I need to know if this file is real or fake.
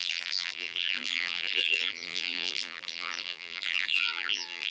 fake